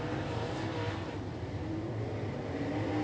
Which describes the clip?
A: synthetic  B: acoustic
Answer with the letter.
B